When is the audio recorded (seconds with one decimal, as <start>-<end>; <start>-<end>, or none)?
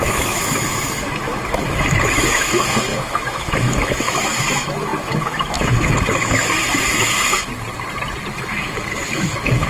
7.5-8.3